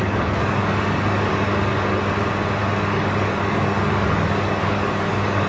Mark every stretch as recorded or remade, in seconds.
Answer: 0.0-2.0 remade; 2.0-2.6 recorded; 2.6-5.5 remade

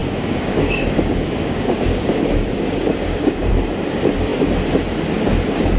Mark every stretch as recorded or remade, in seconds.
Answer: 0.0-3.5 remade; 3.5-5.8 recorded